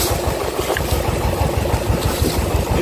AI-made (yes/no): no